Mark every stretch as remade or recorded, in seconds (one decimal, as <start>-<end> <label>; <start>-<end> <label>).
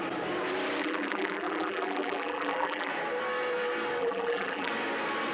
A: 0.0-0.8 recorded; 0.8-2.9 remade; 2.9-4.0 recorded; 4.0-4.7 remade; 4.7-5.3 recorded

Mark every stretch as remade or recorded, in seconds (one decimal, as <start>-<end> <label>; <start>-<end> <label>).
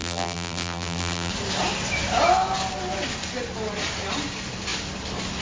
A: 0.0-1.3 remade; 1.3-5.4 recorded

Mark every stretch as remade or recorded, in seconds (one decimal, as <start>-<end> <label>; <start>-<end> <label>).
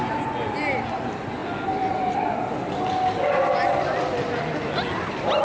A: 0.0-5.4 recorded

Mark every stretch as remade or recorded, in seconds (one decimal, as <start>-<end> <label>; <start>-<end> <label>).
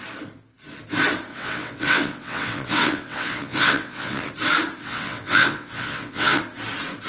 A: 0.0-1.3 recorded; 1.3-4.3 remade; 4.3-4.8 recorded; 4.8-6.4 remade; 6.4-7.1 recorded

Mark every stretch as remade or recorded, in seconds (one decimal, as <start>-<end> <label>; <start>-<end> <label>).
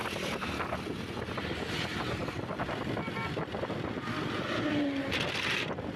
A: 0.0-6.0 recorded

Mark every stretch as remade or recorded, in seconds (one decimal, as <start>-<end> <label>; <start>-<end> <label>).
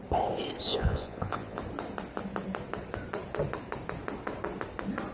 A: 0.0-0.7 recorded; 0.7-1.6 remade; 1.6-5.1 recorded